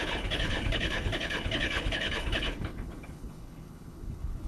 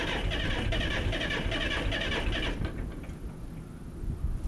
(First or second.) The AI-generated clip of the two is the first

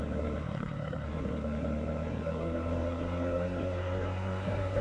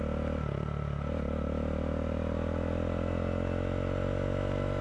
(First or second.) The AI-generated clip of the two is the first